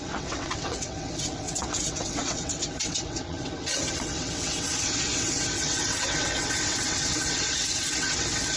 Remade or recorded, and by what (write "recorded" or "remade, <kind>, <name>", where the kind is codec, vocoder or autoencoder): remade, vocoder, WaveNeXt